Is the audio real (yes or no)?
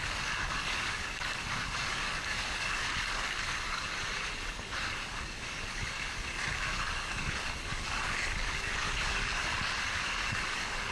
no